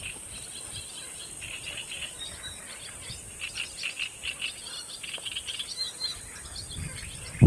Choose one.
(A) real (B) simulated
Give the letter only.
A